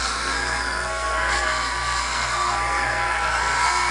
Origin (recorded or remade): remade